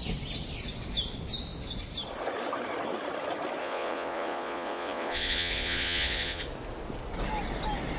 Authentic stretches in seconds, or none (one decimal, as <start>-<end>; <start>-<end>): 0.0-3.6; 6.4-8.0